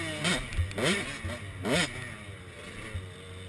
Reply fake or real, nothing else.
real